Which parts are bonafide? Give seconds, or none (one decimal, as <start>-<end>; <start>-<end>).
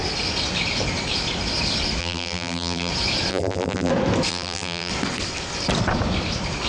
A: 0.0-2.0; 2.9-3.3; 3.9-4.3; 4.9-6.7